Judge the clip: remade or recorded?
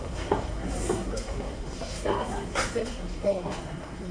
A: remade